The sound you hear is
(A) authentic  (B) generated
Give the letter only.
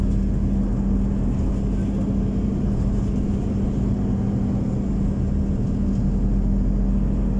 A